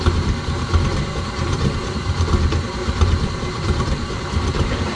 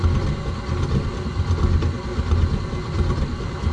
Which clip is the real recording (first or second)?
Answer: second